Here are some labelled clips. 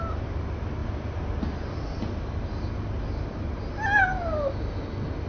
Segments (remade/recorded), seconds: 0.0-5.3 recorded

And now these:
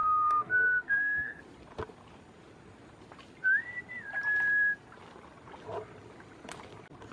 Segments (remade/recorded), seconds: 0.0-1.4 remade; 1.4-7.1 recorded

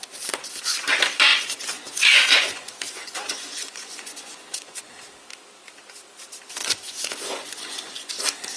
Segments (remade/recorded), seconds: 0.0-1.3 recorded; 1.3-4.8 remade; 4.8-6.6 recorded; 6.6-8.1 remade; 8.1-8.6 recorded

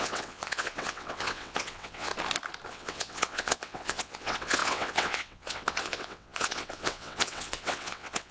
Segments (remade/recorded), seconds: 0.0-2.1 remade; 2.1-2.7 recorded; 2.7-8.3 remade